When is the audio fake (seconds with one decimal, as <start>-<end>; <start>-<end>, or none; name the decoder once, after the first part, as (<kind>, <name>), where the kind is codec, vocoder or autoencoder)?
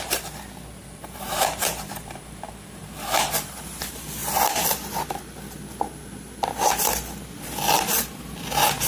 0.8-3.3 (vocoder, BigVGAN v2)